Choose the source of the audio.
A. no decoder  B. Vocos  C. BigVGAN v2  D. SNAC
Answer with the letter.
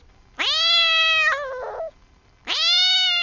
A